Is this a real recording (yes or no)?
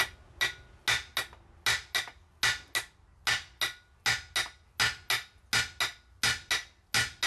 yes